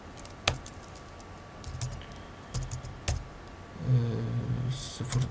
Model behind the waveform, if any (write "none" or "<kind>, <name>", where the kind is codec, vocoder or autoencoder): none